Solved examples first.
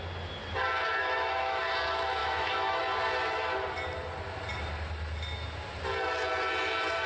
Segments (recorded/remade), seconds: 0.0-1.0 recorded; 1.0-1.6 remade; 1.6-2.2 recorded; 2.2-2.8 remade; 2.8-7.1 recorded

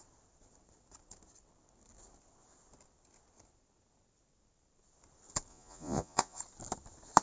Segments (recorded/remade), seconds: 0.0-5.5 recorded; 5.5-6.4 remade; 6.4-7.2 recorded